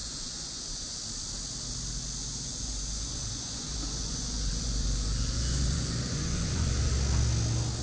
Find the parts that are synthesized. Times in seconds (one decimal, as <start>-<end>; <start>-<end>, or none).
0.0-1.0; 2.2-6.9